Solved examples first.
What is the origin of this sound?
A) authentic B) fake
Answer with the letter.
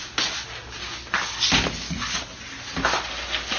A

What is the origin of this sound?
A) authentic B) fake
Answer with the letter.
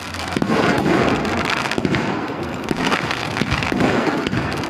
B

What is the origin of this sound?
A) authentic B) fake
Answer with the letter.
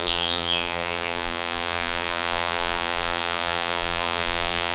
B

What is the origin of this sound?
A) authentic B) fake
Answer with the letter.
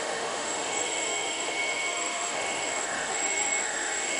B